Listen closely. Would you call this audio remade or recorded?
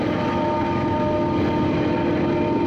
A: recorded